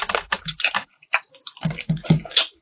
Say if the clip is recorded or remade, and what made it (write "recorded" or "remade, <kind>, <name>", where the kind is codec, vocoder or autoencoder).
recorded